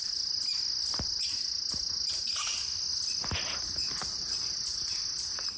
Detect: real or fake real